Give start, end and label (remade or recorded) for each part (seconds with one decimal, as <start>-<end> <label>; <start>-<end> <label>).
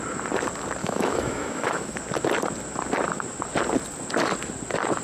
0.0-0.8 recorded; 0.8-2.0 remade; 2.0-5.0 recorded